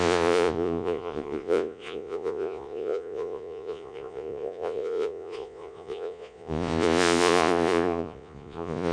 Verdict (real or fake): fake